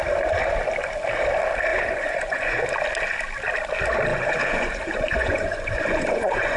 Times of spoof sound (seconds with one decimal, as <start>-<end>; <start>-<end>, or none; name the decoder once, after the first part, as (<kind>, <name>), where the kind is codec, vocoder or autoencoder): 1.7-2.6 (vocoder, Vocos); 4.1-6.6